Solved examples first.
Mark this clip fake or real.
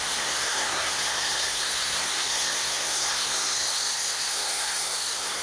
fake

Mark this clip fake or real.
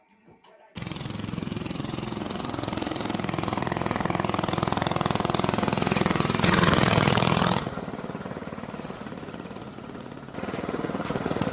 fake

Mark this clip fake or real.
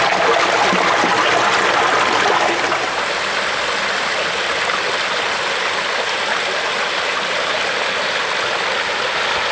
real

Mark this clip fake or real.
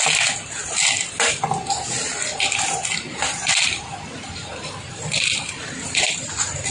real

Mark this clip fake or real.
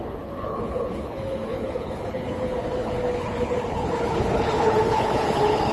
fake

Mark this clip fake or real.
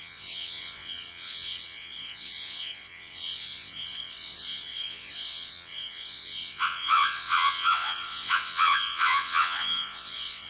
fake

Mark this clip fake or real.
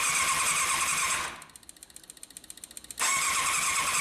real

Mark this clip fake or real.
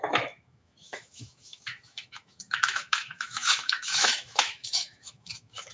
fake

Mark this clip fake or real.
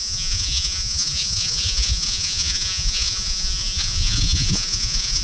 fake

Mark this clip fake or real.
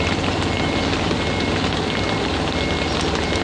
real